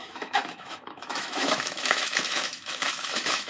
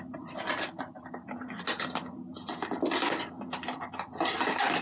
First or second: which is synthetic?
first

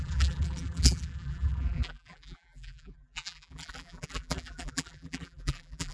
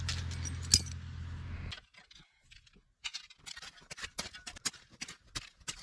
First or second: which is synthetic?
first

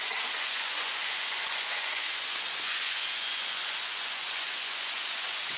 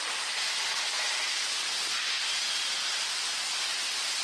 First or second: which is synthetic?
first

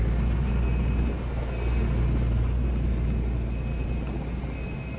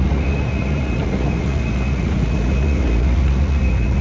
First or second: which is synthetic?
second